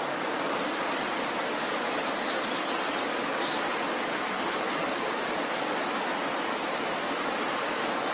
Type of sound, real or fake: real